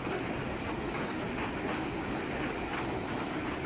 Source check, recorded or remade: recorded